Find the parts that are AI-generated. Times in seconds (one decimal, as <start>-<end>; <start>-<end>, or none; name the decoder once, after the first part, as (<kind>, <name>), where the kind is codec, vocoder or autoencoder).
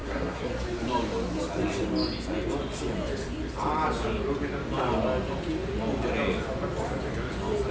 0.0-0.5 (codec, SNAC)